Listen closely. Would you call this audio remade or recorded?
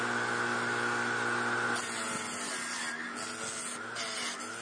recorded